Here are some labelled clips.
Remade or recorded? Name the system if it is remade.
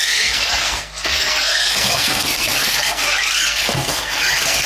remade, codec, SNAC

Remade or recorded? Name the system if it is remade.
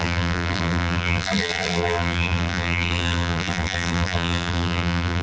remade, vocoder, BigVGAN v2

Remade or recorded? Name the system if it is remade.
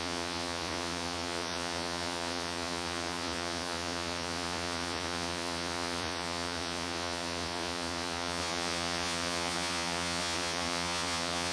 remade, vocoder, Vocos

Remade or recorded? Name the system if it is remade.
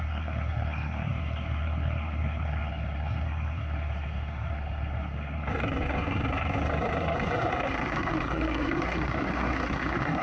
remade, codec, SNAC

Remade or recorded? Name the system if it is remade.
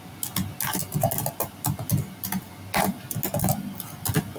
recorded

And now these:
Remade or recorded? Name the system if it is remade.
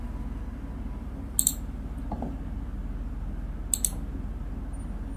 recorded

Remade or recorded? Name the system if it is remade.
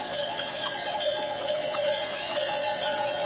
remade, vocoder, Vocos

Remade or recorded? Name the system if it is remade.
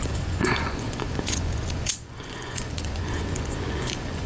remade, vocoder, Vocos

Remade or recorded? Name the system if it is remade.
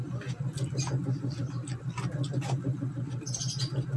recorded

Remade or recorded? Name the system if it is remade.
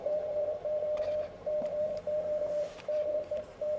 remade, vocoder, BigVGAN v2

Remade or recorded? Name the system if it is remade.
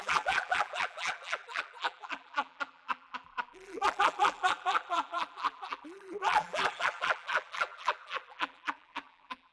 remade, vocoder, BigVGAN v2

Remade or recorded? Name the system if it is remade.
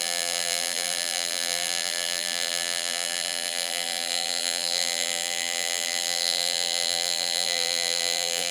remade, vocoder, BigVGAN v2